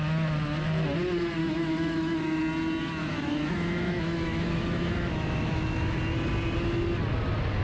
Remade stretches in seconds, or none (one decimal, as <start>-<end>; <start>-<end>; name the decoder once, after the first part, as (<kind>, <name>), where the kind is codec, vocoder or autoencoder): 1.4-2.4 (autoencoder, DAC-VAE); 3.0-6.0